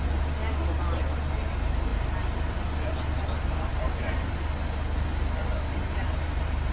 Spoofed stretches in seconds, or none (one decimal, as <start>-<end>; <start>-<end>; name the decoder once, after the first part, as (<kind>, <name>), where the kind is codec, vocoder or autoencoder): none